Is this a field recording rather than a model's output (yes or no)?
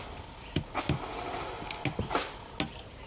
yes